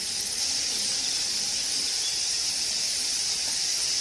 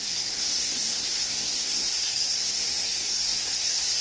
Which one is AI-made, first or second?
second